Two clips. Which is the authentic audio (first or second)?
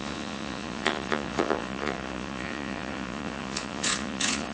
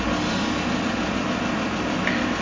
second